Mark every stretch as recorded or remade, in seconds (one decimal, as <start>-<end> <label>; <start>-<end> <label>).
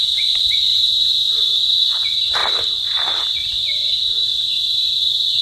0.0-0.7 recorded; 0.7-1.3 remade; 1.3-2.4 recorded; 2.4-3.4 remade; 3.4-3.8 recorded; 3.8-5.0 remade; 5.0-5.4 recorded